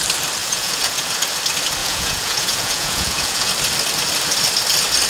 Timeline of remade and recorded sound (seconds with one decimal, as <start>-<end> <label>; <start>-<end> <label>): 0.0-0.4 recorded; 0.4-1.2 remade; 1.2-1.8 recorded; 1.8-3.5 remade; 3.5-5.1 recorded